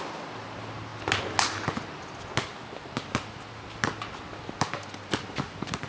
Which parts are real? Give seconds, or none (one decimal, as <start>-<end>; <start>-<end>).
0.0-5.9